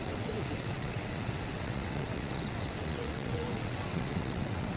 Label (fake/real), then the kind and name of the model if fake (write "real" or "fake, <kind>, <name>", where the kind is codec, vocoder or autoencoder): fake, vocoder, WaveNeXt